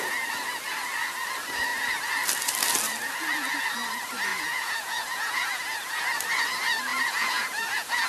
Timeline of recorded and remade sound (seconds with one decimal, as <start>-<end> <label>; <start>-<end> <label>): 0.0-4.3 recorded; 4.3-5.9 remade; 5.9-6.9 recorded; 6.9-8.1 remade